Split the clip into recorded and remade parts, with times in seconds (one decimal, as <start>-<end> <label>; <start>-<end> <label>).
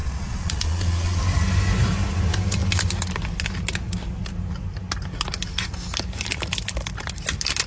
0.0-1.2 remade; 1.2-7.7 recorded